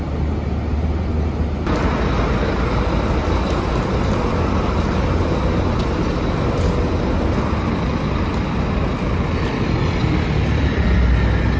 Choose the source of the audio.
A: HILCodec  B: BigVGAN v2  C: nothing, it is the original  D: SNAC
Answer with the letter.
C